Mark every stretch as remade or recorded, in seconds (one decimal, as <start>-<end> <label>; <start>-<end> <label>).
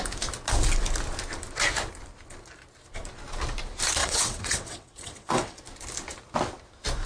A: 0.0-4.0 recorded; 4.0-5.6 remade; 5.6-7.1 recorded